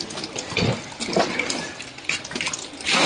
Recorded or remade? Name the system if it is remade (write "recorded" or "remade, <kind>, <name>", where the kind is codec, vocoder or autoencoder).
recorded